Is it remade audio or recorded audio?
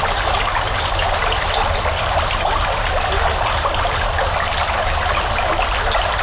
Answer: recorded